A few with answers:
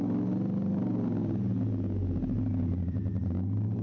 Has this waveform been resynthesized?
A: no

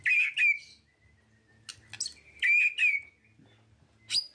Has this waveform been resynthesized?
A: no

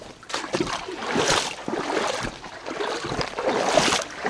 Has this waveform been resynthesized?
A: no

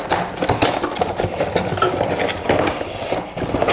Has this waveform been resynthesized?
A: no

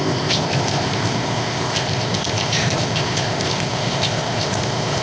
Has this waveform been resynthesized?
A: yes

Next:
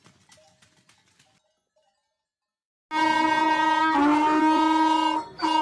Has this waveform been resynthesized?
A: no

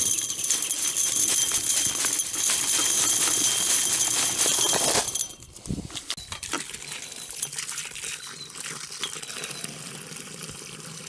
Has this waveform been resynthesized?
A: no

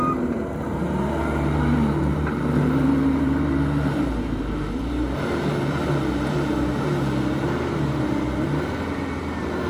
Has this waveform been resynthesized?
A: yes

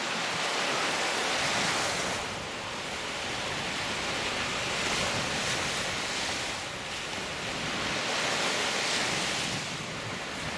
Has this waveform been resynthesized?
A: no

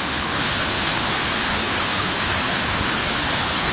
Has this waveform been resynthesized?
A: yes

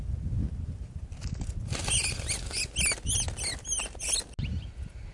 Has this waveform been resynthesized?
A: no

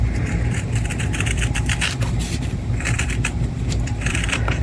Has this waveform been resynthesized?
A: yes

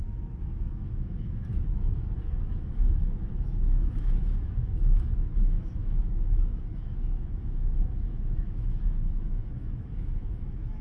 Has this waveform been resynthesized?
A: yes